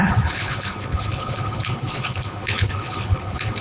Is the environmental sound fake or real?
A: fake